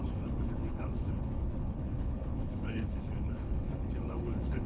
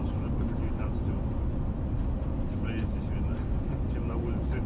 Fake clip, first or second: first